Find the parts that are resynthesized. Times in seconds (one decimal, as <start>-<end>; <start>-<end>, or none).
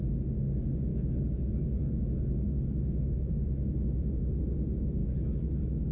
0.9-4.4; 5.0-5.9